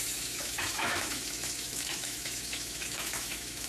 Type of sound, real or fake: fake